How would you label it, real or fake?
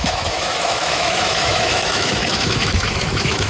fake